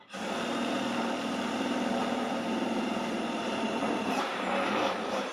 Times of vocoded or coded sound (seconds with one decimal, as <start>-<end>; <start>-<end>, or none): 0.0-5.3